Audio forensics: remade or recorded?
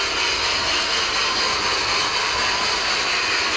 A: recorded